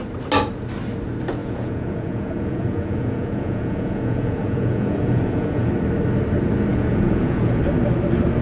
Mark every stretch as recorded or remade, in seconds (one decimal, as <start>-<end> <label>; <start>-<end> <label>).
0.0-1.4 recorded; 1.4-5.7 remade; 5.7-6.7 recorded; 6.7-7.6 remade; 7.6-8.4 recorded